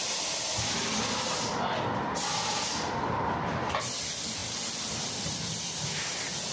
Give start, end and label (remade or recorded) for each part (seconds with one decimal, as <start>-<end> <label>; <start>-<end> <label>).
0.0-3.5 recorded; 3.5-6.5 remade